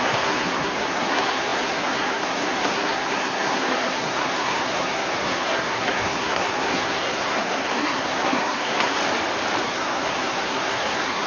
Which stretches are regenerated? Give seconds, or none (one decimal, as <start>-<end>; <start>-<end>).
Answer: 0.0-9.0; 9.6-11.3